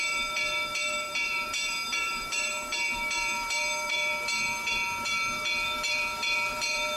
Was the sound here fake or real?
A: fake